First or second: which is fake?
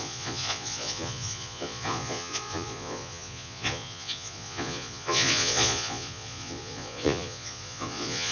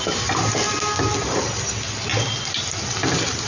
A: first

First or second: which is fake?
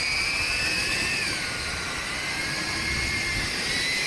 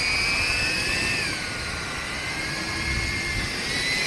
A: first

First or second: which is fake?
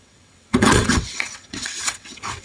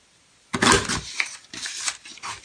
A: first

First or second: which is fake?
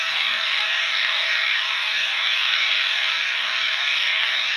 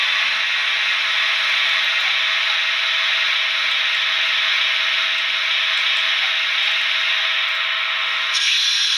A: first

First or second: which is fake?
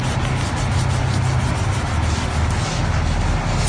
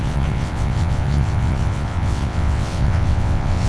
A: second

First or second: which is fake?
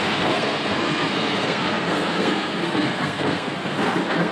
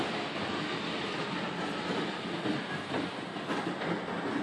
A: first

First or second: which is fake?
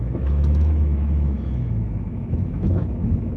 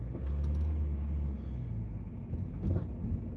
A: first